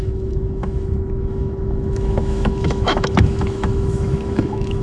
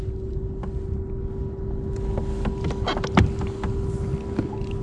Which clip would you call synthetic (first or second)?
first